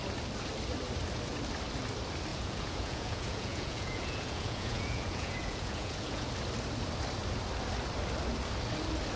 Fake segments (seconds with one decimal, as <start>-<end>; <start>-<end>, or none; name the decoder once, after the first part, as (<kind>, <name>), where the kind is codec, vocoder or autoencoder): 2.3-6.3 (vocoder, Vocos)